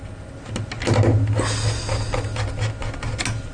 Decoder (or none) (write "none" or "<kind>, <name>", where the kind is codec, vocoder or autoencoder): none